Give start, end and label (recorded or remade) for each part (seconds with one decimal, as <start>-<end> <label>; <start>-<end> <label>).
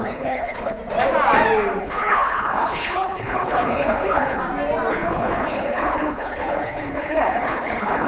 0.0-0.8 remade; 0.8-1.8 recorded; 1.8-4.4 remade; 4.4-4.9 recorded; 4.9-8.1 remade